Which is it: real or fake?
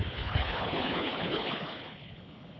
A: fake